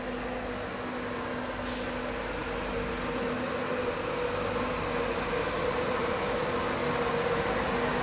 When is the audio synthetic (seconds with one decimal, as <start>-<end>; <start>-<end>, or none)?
none